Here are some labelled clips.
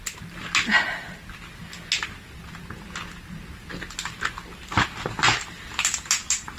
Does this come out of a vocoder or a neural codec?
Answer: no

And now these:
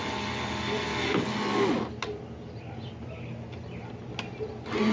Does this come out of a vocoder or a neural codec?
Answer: no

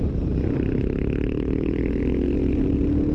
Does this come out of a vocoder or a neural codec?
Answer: no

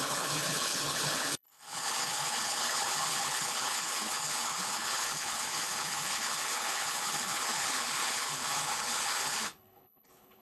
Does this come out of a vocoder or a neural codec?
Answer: yes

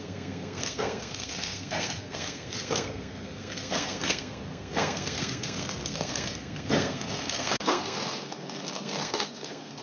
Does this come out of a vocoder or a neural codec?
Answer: yes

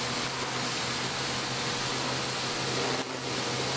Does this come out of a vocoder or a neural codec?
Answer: no